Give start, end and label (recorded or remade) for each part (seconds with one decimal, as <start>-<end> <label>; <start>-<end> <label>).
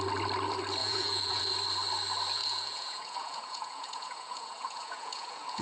0.0-0.8 recorded; 0.8-1.4 remade; 1.4-2.4 recorded; 2.4-5.6 remade